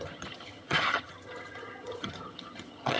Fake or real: fake